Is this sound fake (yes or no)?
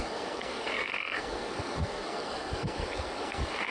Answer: yes